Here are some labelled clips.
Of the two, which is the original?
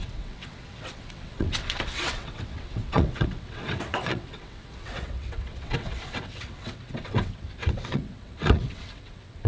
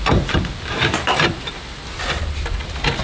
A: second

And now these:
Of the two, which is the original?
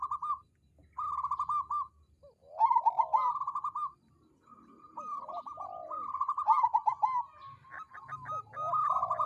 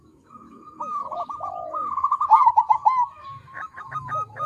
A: first